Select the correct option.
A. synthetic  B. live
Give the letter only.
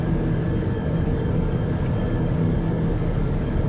A